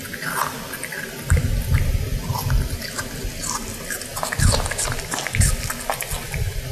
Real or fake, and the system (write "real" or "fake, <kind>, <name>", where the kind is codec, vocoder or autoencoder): real